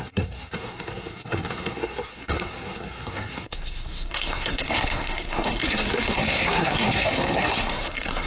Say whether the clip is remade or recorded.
remade